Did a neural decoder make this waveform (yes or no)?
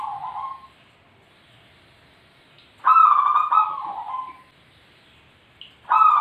no